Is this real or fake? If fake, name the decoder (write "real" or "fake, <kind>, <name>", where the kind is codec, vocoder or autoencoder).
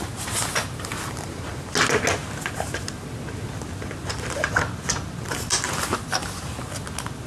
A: real